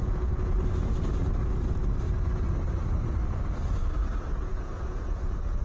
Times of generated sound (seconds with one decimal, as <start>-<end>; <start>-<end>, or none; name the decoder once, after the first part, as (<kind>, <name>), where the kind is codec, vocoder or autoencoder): 0.0-0.6 (vocoder, Vocos); 4.5-5.6